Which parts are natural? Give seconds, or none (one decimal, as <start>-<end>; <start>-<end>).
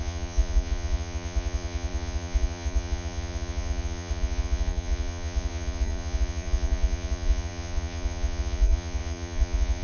none